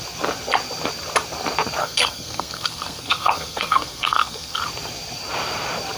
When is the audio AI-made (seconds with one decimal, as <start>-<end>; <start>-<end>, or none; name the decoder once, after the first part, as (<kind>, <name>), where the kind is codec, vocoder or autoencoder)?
1.8-4.6 (codec, SNAC)